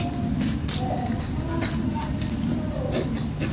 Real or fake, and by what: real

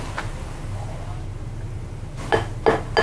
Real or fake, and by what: real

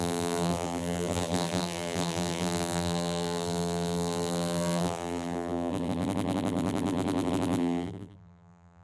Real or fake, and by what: fake, vocoder, BigVGAN v2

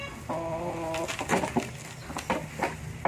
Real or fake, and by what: real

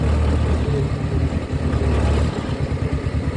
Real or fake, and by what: real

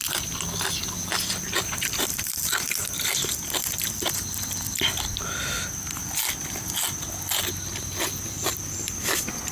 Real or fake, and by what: real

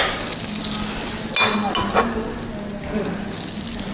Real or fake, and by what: real